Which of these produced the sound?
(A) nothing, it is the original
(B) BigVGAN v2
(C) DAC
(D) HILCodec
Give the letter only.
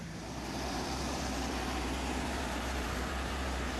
B